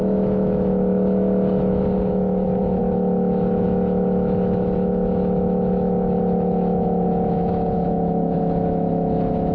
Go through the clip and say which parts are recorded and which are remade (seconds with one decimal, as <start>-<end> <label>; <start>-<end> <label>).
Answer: 0.0-9.5 remade